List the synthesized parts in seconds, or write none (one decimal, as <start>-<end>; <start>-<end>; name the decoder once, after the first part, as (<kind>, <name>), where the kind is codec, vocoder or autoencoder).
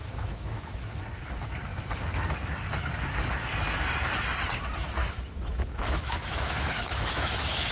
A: 0.0-1.0 (autoencoder, DAC-VAE); 5.0-7.7